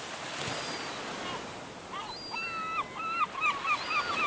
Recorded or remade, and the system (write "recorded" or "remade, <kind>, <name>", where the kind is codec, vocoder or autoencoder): recorded